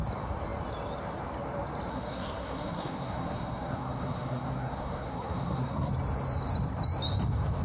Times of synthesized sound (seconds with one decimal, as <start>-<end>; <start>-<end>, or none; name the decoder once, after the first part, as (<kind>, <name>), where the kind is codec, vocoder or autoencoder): 1.9-5.9 (codec, SNAC)